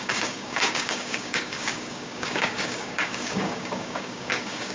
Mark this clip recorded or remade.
remade